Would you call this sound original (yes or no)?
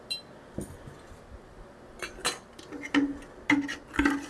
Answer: yes